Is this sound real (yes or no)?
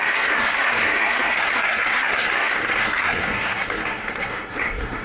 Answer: no